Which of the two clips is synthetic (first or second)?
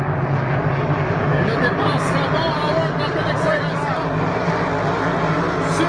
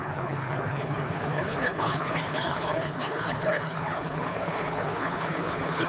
second